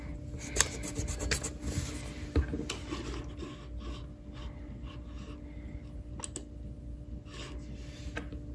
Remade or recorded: recorded